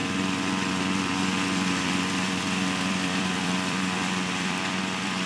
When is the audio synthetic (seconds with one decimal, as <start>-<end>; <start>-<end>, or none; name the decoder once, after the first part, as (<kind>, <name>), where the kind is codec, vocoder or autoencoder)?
0.0-5.3 (vocoder, BigVGAN v2)

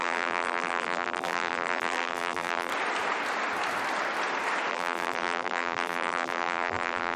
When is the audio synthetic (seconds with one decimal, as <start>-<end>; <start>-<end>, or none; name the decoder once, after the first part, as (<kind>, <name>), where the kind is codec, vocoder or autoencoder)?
0.0-2.7 (vocoder, BigVGAN v2); 4.7-7.2

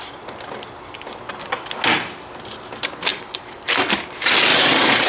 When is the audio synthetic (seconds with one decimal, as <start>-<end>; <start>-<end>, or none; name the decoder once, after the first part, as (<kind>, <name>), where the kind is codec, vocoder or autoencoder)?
3.1-3.7 (vocoder, BigVGAN v2); 4.5-5.1

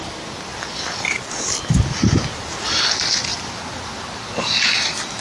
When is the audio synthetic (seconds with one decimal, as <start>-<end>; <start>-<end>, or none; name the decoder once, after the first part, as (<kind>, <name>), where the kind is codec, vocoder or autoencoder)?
0.5-1.3 (vocoder, BigVGAN v2); 2.3-2.8

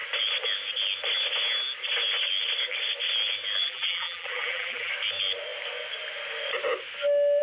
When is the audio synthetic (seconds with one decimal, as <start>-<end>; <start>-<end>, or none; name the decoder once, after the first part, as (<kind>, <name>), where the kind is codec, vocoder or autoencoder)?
3.6-4.9 (vocoder, BigVGAN v2)

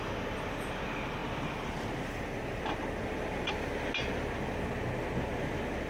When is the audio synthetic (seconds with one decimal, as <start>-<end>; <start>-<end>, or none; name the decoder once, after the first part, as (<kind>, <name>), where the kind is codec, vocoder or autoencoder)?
1.2-3.5 (vocoder, BigVGAN v2)

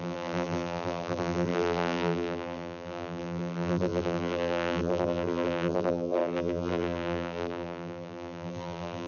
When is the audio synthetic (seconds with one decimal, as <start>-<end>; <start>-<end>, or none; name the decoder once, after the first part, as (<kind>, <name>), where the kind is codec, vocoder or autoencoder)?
0.0-9.1 (vocoder, BigVGAN v2)